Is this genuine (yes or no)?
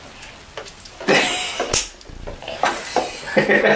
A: yes